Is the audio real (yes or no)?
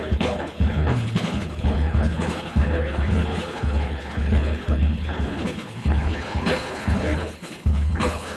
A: no